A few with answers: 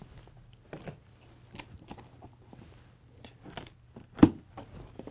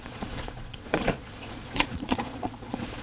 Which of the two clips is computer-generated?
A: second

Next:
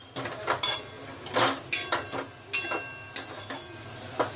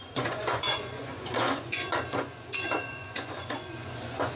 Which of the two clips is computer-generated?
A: second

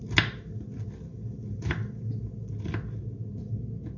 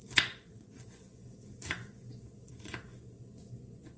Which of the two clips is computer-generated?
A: second